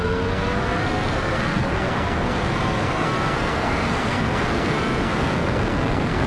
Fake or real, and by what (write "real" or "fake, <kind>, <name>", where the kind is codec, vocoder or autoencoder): fake, codec, SNAC